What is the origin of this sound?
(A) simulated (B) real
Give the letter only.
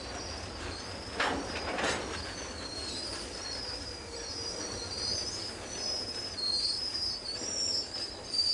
B